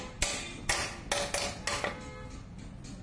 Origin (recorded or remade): recorded